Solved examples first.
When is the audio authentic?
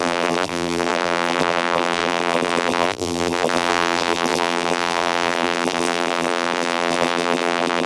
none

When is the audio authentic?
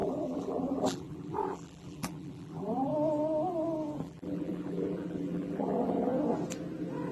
2.9-4.0; 6.1-7.1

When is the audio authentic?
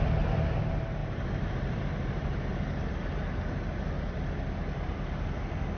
0.0-1.0; 2.8-5.8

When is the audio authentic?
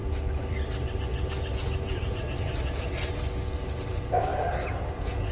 0.0-4.3; 4.8-5.3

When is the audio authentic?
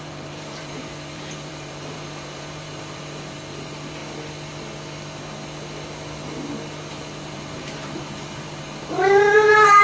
4.0-6.9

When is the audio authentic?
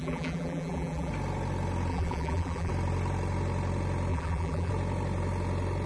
1.1-1.9; 2.7-4.1; 4.7-5.9